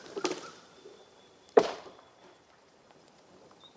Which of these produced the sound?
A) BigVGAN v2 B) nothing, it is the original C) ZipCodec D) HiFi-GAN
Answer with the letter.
A